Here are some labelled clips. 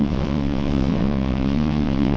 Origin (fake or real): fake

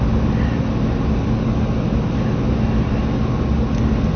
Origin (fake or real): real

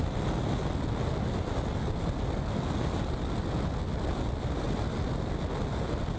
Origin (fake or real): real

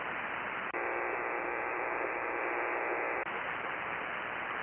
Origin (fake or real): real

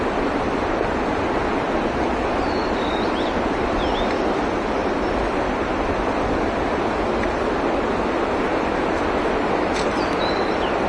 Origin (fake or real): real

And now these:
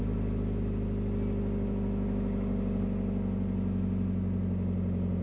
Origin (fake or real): real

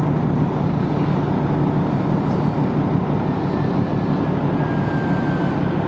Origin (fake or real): real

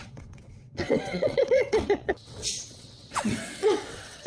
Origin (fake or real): fake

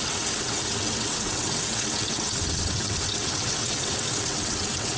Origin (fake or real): fake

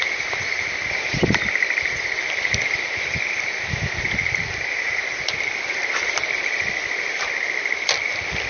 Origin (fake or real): real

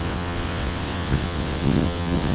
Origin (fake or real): fake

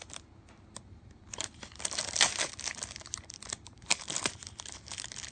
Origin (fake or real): real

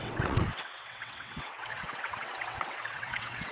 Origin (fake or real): fake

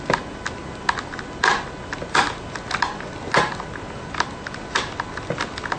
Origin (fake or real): real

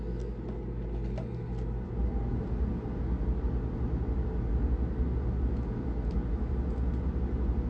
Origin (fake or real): real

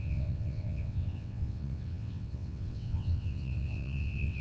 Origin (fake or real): fake